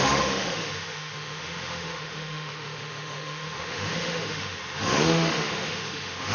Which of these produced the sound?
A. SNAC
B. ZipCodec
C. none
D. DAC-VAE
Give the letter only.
D